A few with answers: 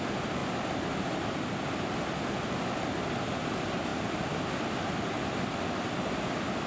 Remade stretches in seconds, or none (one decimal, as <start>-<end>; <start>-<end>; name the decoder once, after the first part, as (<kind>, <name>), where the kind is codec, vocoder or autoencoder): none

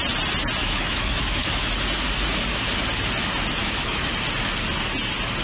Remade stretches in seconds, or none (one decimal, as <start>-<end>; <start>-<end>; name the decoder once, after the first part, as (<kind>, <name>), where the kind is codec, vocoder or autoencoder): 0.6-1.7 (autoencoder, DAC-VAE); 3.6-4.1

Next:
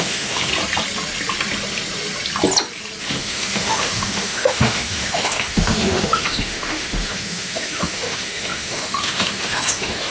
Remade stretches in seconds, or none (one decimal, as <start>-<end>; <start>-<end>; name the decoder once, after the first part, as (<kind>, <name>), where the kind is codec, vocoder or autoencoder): 0.0-0.5 (autoencoder, DAC-VAE); 3.0-10.1